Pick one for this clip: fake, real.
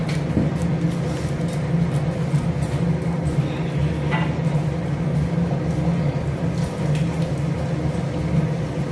real